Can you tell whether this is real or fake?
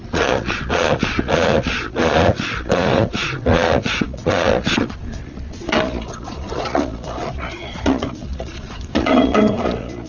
fake